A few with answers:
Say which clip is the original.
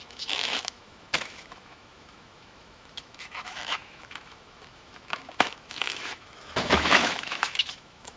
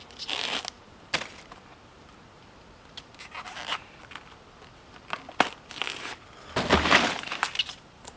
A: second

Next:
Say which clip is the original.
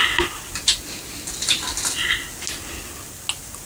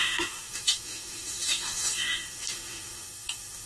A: first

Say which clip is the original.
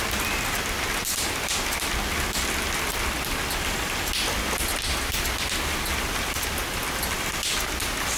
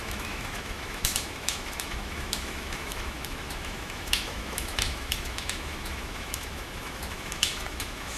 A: first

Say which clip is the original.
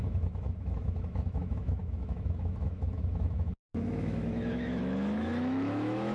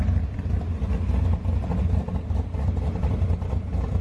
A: second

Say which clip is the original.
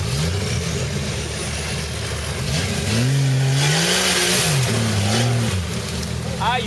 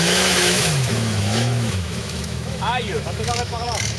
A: first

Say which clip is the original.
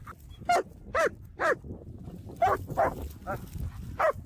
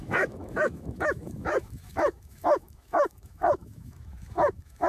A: first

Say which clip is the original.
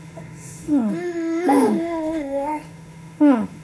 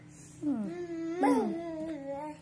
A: second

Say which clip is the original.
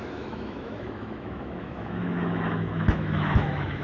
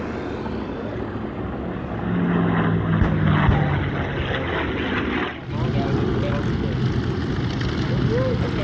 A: second